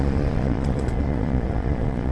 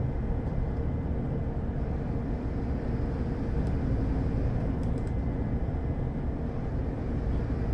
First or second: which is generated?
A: first